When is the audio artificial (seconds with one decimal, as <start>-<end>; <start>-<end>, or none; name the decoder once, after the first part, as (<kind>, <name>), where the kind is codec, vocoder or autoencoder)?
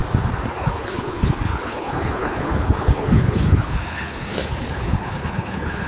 0.5-5.9 (codec, HILCodec)